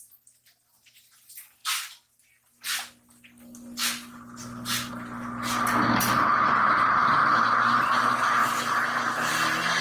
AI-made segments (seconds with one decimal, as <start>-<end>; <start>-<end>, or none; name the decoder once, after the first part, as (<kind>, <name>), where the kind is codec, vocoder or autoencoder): none